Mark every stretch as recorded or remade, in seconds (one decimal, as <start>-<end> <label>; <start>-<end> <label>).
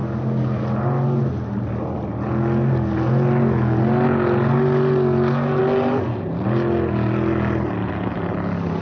0.0-0.6 remade; 0.6-8.8 recorded